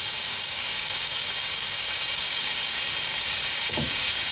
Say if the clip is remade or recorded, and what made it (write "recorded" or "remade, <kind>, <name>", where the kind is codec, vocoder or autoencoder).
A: remade, codec, DAC